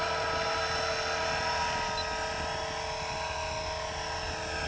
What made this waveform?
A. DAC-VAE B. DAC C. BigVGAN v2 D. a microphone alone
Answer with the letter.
D